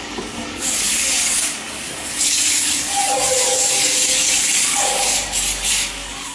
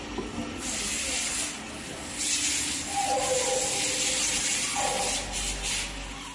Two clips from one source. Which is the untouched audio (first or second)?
second